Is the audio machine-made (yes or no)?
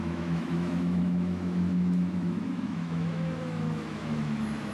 yes